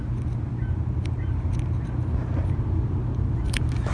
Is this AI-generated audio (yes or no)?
no